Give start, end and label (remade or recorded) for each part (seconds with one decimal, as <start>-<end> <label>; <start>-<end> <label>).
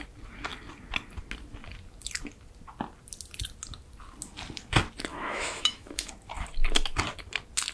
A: 0.0-5.1 recorded; 5.1-6.1 remade; 6.1-7.7 recorded